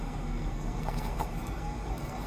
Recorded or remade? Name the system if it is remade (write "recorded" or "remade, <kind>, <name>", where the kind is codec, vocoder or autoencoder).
remade, codec, SNAC